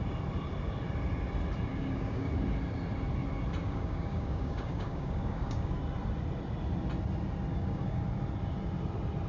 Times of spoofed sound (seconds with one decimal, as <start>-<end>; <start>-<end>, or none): 1.7-2.3; 3.6-5.8; 7.5-8.0